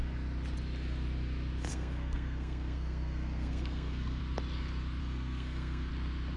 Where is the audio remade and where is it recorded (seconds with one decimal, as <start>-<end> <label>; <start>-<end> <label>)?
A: 0.0-1.7 recorded; 1.7-4.2 remade; 4.2-5.0 recorded; 5.0-5.9 remade; 5.9-6.4 recorded